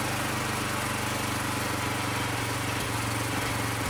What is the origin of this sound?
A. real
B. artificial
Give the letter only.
A